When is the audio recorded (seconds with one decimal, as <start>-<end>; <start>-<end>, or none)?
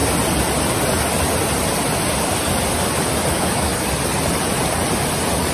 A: 0.0-3.3; 3.7-5.5